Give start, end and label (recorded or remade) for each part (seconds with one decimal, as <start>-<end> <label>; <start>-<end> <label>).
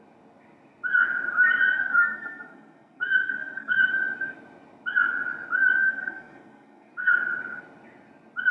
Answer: 0.0-1.7 recorded; 1.7-3.9 remade; 3.9-5.8 recorded; 5.8-7.1 remade; 7.1-8.5 recorded